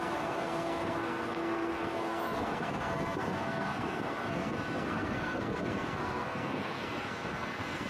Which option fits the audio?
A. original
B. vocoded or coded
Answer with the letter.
B